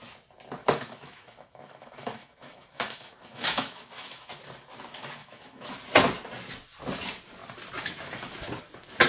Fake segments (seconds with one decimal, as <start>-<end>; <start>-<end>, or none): 0.6-4.3; 5.2-5.7